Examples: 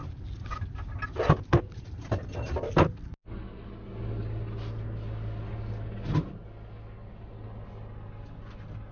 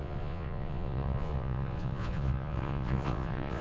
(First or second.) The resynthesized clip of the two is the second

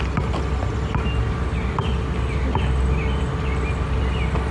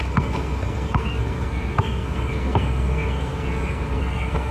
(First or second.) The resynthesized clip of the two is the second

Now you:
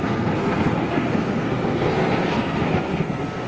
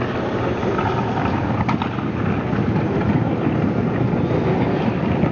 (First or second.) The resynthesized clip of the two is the first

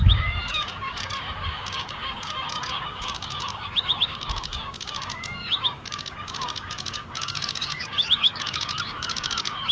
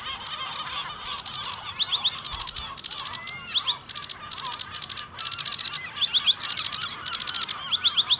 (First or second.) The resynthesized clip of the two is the first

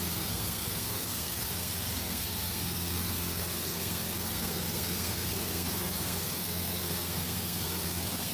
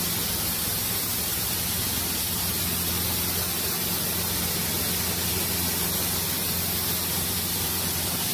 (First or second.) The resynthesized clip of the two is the first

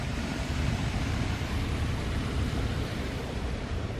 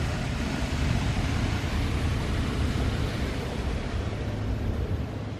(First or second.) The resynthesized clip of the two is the first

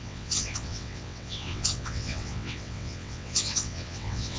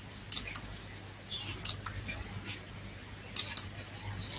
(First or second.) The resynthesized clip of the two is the first